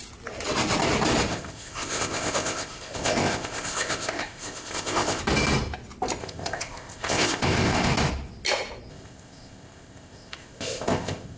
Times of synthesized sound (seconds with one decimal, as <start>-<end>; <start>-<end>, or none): 1.3-5.2; 6.2-7.9; 8.9-11.4